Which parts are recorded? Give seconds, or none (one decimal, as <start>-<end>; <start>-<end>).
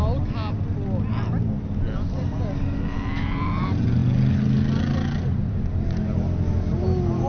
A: 0.0-7.3